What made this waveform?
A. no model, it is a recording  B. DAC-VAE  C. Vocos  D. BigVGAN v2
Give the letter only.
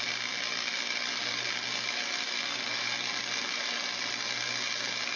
A